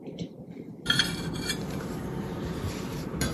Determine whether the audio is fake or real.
fake